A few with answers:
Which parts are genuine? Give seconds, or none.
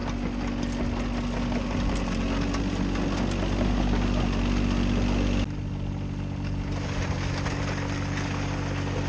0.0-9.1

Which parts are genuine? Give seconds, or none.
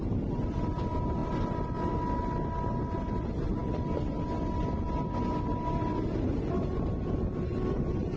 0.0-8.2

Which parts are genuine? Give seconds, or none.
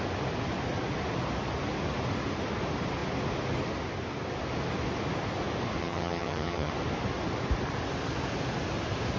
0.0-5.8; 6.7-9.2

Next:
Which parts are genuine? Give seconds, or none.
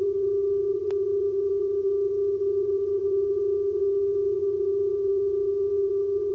none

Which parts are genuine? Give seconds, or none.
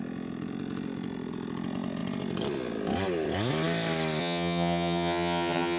0.0-4.2